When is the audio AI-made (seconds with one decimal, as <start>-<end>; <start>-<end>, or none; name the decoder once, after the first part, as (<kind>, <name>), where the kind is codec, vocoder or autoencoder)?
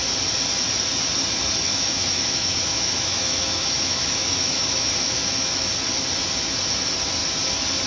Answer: 1.7-5.7 (autoencoder, DAC-VAE)